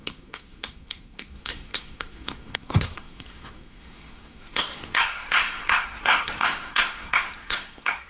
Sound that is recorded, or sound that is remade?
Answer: remade